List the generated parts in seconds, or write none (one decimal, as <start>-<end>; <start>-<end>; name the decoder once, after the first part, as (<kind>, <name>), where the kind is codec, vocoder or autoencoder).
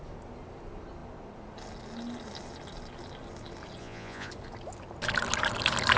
3.8-4.3 (vocoder, Vocos)